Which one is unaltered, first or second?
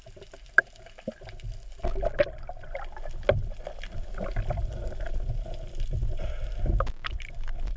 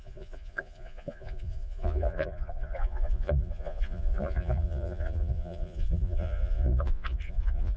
first